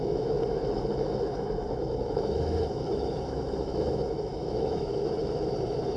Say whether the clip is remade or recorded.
remade